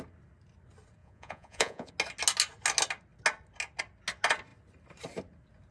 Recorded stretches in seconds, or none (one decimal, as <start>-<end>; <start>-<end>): 0.0-1.0; 1.9-5.7